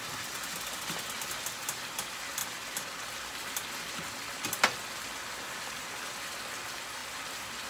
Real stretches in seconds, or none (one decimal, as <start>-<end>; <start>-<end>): 0.0-7.7